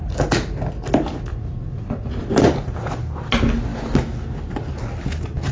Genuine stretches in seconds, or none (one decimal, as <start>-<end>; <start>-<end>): 0.0-1.3; 2.2-5.5